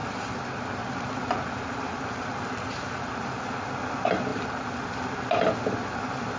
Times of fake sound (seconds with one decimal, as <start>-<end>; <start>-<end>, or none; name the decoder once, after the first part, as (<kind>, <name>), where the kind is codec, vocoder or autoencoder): 0.0-3.8 (vocoder, BigVGAN v2); 4.3-4.9